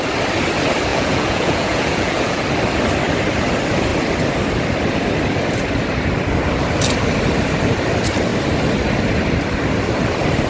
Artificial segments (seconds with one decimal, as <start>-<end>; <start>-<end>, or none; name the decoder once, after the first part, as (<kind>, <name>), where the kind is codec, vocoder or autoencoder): 0.9-2.4 (vocoder, Vocos)